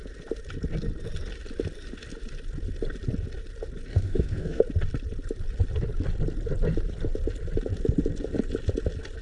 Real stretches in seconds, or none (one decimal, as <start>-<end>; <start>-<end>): 0.0-3.9; 4.6-9.2